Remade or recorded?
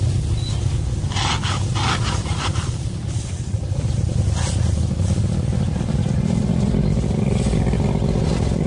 recorded